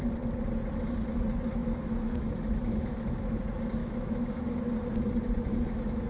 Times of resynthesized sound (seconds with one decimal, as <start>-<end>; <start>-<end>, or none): 1.6-3.4; 3.8-4.6; 5.5-6.1